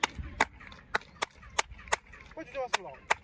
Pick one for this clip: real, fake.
real